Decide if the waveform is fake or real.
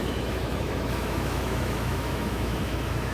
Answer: fake